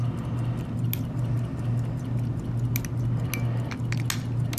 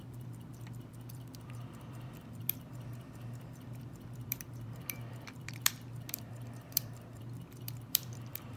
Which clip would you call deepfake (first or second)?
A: second